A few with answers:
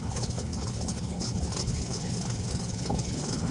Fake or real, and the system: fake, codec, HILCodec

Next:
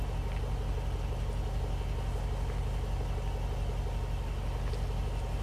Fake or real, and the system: real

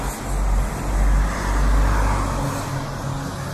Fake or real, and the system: real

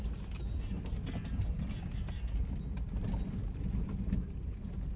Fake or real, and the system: real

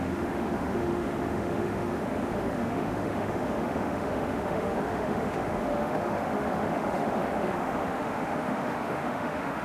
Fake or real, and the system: fake, autoencoder, DAC-VAE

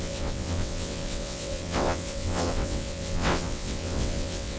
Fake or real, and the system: fake, vocoder, WaveNeXt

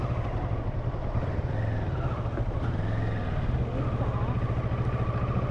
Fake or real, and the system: real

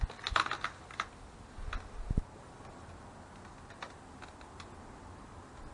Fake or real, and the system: real